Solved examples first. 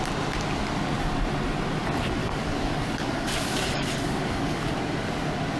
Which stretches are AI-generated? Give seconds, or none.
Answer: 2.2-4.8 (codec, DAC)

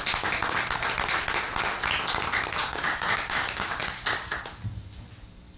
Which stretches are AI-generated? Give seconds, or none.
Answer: 2.6-3.8 (codec, DAC)

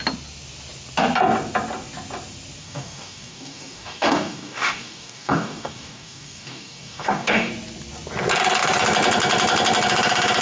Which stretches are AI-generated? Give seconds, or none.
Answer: 2.6-7.5 (codec, DAC)

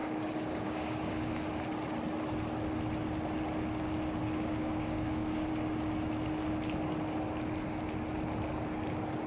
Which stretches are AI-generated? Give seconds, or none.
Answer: 0.0-1.3 (codec, DAC); 4.2-5.5

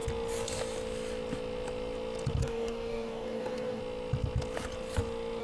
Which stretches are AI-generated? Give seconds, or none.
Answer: 2.4-3.8 (codec, DAC)

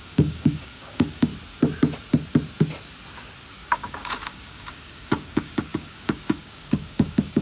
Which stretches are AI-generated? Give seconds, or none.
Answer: 0.0-1.3 (codec, DAC); 3.6-7.4